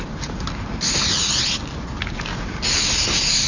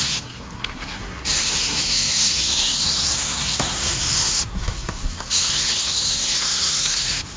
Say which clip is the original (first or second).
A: first